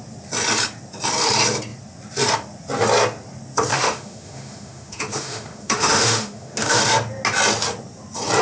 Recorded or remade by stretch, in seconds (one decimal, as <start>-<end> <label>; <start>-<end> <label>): 0.0-3.7 recorded; 3.7-6.8 remade; 6.8-8.4 recorded